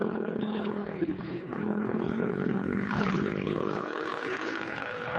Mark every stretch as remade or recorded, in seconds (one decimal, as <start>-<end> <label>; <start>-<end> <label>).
0.0-5.2 remade